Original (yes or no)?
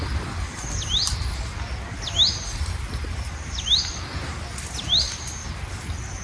yes